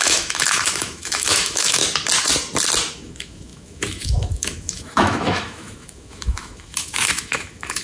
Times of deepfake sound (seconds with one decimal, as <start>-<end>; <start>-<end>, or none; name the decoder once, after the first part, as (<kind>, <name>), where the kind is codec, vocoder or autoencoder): 0.0-1.8 (autoencoder, DAC-VAE); 2.9-7.8